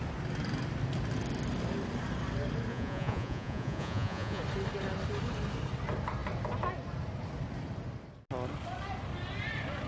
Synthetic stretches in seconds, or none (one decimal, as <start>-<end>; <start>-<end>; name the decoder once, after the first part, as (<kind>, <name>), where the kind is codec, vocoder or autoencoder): 2.7-4.4 (vocoder, Vocos)